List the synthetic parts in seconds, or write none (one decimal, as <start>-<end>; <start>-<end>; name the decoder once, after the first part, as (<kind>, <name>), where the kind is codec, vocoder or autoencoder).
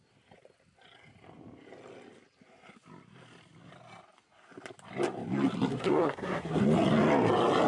5.7-6.6 (codec, SNAC)